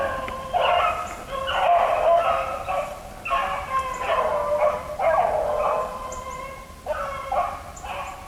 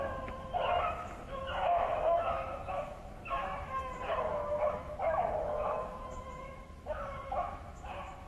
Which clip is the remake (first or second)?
second